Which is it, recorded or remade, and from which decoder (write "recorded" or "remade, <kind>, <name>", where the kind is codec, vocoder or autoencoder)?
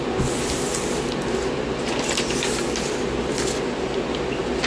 recorded